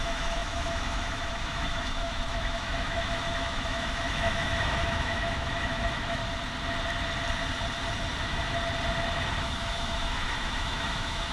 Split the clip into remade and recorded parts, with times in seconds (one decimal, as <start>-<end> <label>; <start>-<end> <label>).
0.0-6.2 remade; 6.2-9.4 recorded; 9.4-11.3 remade